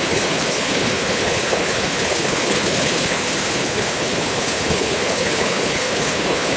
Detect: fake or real fake